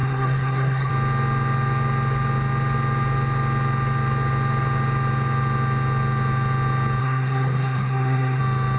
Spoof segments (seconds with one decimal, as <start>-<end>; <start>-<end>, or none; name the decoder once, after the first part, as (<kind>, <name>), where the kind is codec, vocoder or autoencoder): 0.0-0.9 (codec, SNAC); 7.0-8.4

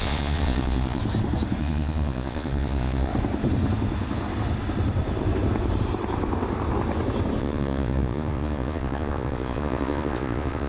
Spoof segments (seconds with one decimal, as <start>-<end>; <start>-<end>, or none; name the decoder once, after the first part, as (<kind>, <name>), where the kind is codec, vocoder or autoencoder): 0.0-1.0 (vocoder, Vocos); 1.6-3.1; 7.4-10.7

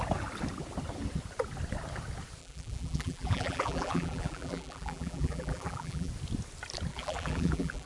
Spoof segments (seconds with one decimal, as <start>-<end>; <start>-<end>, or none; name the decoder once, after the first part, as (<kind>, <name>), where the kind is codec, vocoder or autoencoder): 2.4-6.1 (vocoder, BigVGAN v2); 6.9-7.9

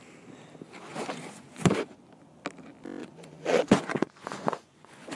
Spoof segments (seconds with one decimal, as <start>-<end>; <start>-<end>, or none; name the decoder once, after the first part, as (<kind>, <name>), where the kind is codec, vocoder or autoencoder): 0.9-2.0 (vocoder, Vocos); 3.0-5.2

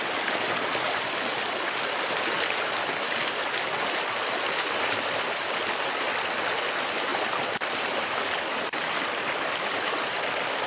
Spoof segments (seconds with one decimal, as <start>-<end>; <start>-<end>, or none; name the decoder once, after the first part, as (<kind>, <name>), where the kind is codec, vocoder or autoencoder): none